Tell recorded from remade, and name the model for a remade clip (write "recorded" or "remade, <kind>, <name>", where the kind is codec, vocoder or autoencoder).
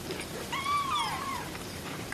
remade, vocoder, BigVGAN v2